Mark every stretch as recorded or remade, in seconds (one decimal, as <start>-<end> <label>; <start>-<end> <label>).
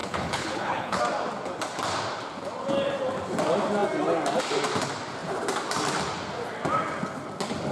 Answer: 0.0-1.0 remade; 1.0-7.7 recorded